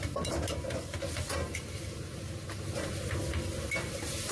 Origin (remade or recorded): recorded